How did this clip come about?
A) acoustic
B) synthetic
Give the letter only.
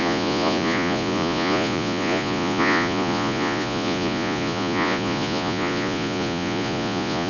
B